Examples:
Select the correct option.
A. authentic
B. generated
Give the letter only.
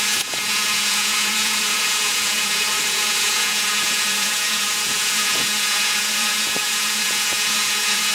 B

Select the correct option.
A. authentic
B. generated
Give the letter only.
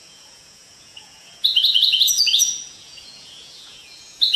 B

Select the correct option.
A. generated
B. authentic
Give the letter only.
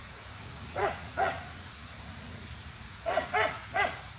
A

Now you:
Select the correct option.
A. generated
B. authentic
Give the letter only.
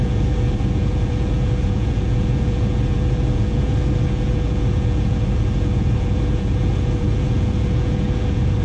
A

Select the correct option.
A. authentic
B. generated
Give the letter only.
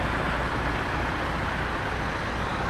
A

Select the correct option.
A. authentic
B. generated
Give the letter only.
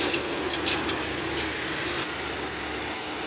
A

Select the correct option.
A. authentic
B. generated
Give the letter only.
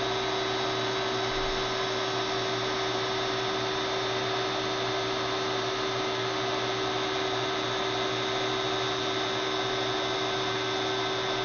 A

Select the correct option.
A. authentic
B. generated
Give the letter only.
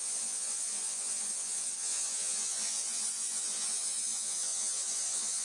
B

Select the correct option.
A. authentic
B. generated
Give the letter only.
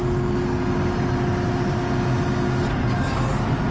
A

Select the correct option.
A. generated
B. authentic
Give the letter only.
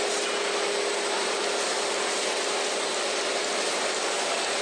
B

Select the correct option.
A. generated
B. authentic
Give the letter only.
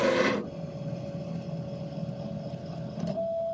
B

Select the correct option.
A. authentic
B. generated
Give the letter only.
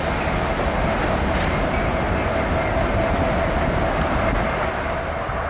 A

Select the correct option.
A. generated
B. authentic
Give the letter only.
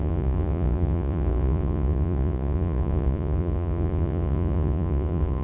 A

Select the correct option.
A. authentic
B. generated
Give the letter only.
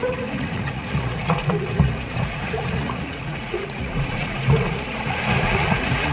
B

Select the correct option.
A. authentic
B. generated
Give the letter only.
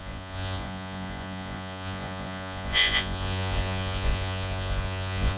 B